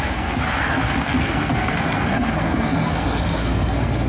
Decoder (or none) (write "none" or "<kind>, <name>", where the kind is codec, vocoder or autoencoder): codec, SNAC